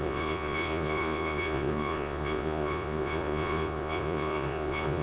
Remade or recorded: remade